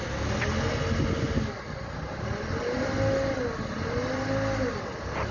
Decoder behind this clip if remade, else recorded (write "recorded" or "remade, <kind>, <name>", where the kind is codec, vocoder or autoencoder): recorded